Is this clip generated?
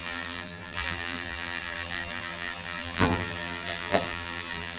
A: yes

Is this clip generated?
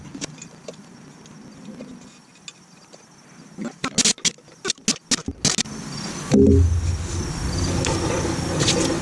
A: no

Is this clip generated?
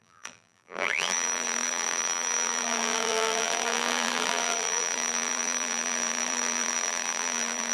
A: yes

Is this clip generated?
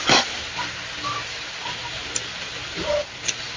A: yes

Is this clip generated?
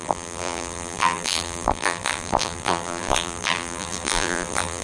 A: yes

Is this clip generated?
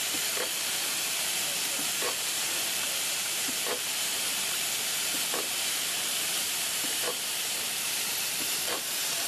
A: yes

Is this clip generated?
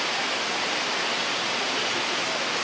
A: no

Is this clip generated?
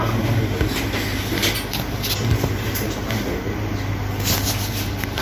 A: no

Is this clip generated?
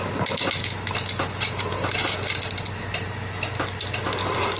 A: no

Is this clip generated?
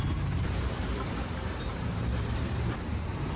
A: yes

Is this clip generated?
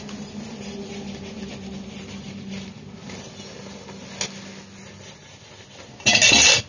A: no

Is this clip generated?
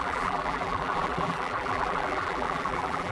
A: yes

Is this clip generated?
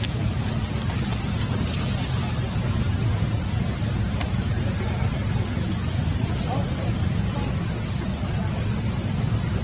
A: no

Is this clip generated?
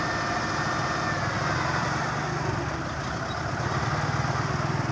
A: no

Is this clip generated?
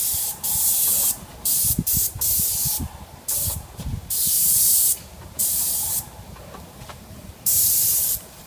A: yes